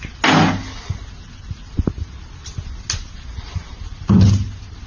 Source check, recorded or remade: recorded